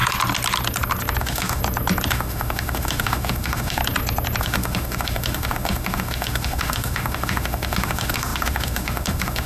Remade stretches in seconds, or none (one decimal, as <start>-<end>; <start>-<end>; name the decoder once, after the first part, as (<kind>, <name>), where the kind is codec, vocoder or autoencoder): 1.2-1.6 (autoencoder, DAC-VAE); 2.1-3.8; 4.4-9.5